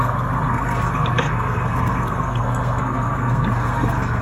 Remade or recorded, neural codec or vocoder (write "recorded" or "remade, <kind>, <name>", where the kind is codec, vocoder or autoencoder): remade, codec, SNAC